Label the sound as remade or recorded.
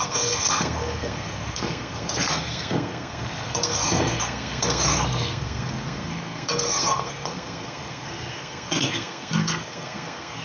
remade